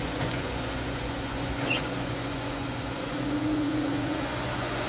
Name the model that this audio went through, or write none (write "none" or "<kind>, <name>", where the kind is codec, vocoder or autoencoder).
vocoder, Vocos